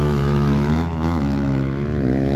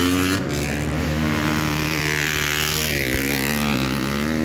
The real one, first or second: second